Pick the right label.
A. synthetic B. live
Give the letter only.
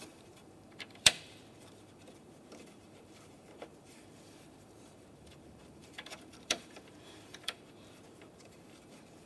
A